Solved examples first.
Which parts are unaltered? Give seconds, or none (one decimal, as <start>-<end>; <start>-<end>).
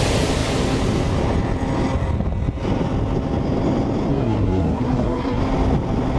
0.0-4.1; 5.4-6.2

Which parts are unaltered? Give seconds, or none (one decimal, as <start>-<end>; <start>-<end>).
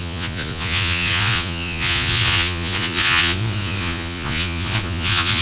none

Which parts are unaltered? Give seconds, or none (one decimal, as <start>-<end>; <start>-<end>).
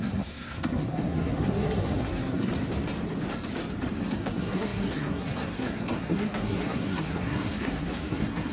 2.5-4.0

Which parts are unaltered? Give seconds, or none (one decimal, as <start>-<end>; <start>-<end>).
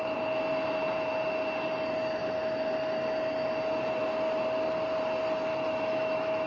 0.0-5.5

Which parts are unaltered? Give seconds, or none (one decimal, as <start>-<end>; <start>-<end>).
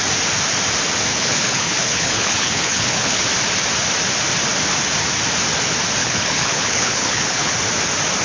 0.0-1.1; 3.2-6.0; 7.5-8.2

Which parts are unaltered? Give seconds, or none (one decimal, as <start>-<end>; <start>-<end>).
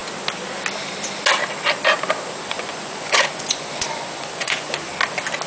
0.0-2.4; 4.9-5.5